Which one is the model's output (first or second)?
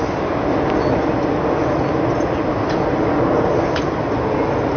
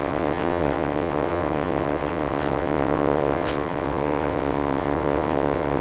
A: second